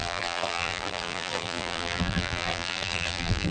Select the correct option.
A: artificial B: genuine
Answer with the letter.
A